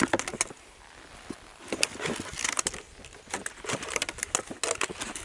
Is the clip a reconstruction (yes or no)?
no